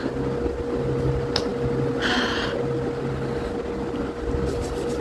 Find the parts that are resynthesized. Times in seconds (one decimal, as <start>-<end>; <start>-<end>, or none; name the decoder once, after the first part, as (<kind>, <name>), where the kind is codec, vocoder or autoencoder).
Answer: none